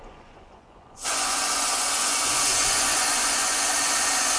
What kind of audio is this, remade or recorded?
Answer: remade